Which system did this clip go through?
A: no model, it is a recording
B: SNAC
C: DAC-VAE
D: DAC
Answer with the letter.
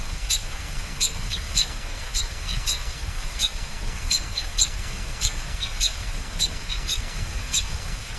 B